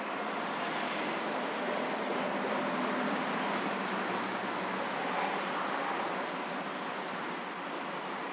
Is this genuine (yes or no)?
yes